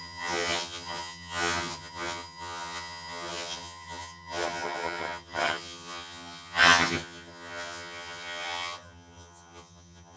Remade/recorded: remade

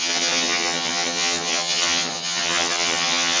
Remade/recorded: remade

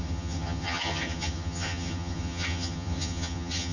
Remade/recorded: remade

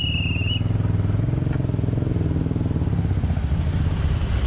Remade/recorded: recorded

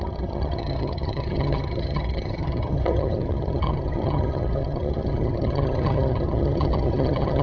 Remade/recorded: remade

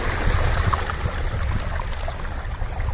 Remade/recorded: recorded